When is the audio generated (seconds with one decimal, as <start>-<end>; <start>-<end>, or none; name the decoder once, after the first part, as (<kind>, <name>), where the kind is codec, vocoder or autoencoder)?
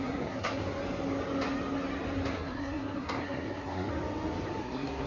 0.0-0.6 (codec, SNAC); 2.3-3.9; 4.6-5.1